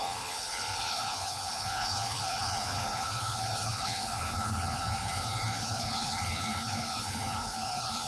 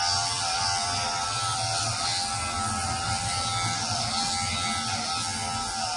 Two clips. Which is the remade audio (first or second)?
first